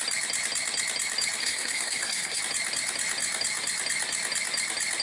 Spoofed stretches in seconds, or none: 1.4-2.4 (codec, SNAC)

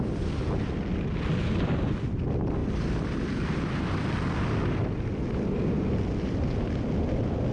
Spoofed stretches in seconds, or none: none

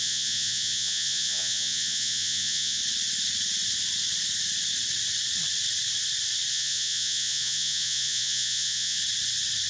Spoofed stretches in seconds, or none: 0.0-2.8 (vocoder, Vocos); 6.5-9.0

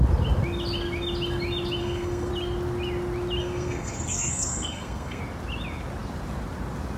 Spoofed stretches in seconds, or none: 1.8-2.3 (codec, SNAC); 3.4-5.2

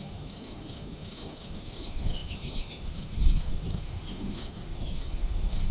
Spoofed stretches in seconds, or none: 0.0-5.7 (autoencoder, DAC-VAE)